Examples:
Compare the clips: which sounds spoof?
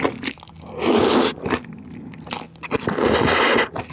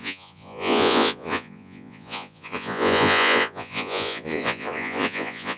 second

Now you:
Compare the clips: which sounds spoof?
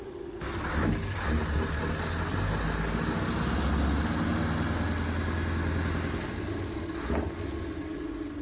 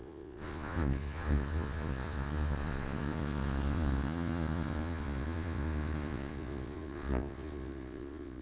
second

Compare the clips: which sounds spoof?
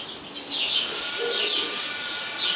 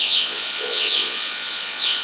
second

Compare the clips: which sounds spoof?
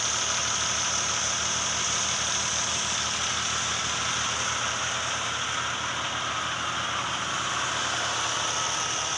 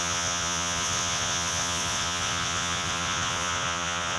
second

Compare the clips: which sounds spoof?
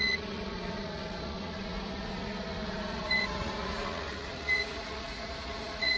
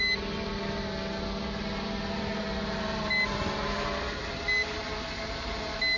first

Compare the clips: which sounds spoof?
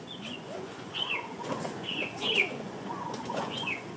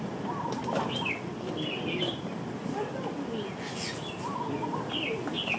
first